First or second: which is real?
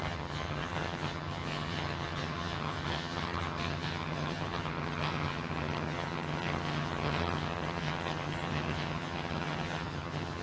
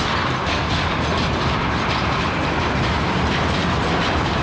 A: second